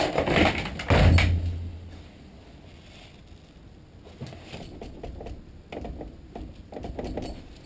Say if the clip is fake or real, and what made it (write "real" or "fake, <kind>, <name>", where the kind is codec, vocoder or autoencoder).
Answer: real